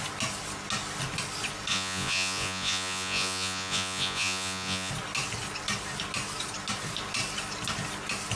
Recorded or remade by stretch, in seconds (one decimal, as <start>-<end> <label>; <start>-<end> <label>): 0.0-1.7 recorded; 1.7-4.9 remade; 4.9-8.4 recorded